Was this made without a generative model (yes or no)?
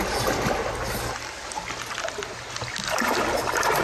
yes